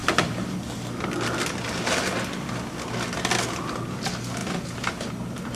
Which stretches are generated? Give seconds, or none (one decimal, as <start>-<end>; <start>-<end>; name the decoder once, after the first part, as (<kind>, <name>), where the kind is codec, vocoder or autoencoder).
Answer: none